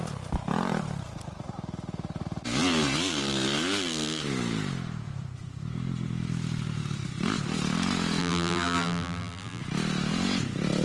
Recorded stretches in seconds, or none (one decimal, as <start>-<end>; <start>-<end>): 0.0-8.2; 9.6-10.8